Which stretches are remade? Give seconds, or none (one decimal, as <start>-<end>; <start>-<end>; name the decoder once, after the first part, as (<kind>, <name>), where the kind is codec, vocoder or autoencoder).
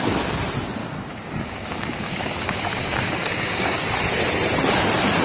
0.8-3.9 (codec, DAC)